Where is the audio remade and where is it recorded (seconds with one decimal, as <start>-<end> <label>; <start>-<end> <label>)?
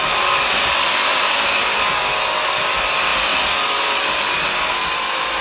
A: 0.0-5.4 recorded